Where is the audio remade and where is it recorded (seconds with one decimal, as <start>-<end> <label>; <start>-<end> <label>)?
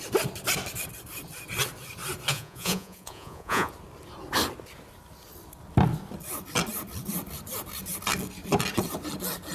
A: 0.0-2.3 recorded; 2.3-3.7 remade; 3.7-9.5 recorded